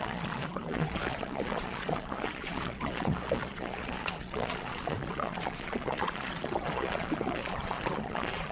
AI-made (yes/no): yes